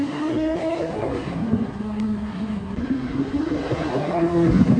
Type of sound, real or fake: fake